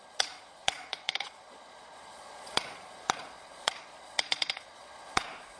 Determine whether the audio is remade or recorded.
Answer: remade